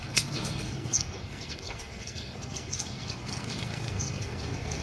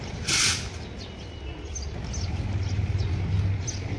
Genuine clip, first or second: second